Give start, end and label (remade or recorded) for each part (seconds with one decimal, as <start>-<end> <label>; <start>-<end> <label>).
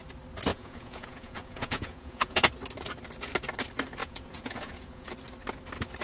0.0-0.5 recorded; 0.5-2.5 remade; 2.5-4.0 recorded; 4.0-5.1 remade; 5.1-6.0 recorded